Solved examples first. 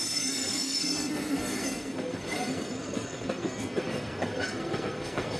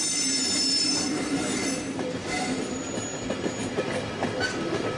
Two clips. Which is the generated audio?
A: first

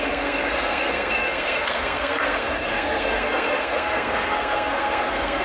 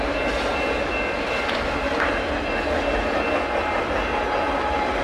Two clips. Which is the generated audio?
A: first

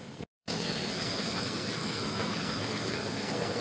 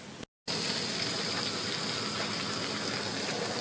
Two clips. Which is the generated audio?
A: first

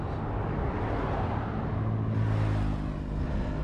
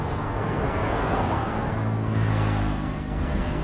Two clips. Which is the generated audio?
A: second